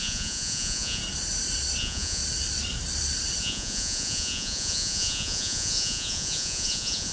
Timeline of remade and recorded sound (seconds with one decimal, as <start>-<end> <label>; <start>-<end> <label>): 0.0-1.0 remade; 1.0-1.8 recorded; 1.8-2.2 remade; 2.2-3.4 recorded; 3.4-7.1 remade